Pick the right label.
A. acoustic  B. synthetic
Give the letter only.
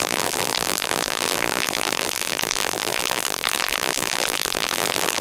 B